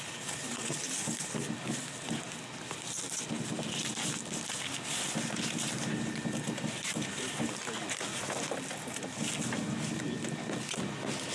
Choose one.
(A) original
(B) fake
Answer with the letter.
A